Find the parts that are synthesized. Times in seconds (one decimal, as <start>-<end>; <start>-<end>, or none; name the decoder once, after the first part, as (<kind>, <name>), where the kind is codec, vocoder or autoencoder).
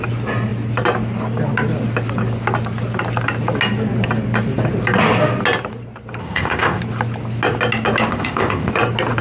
6.2-6.8 (codec, ZipCodec); 8.1-8.7